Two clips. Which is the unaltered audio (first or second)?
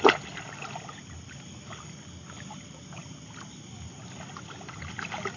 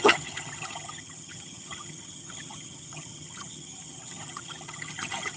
first